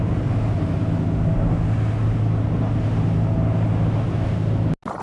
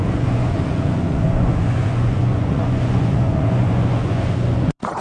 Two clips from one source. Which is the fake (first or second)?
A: second